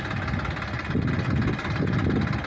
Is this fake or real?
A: real